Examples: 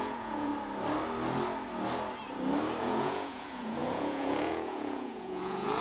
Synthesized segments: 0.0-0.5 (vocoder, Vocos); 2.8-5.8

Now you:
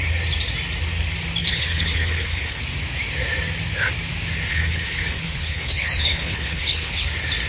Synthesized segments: 1.4-2.6 (codec, HILCodec); 4.5-7.0

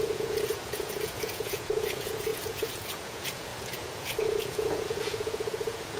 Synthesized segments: 0.0-6.0 (vocoder, Vocos)

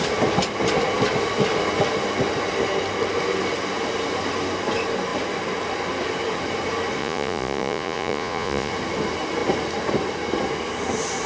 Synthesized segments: 7.0-8.7 (vocoder, Vocos)